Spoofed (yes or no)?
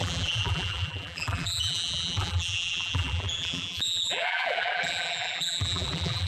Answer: yes